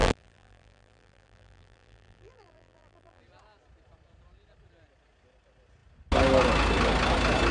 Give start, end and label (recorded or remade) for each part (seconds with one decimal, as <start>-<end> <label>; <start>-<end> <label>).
0.0-3.2 remade; 3.2-7.5 recorded